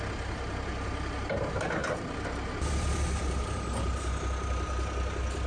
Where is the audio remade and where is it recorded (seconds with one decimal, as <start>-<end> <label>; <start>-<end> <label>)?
0.0-5.5 recorded